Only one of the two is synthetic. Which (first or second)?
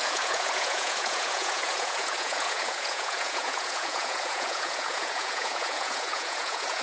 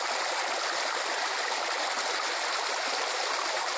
first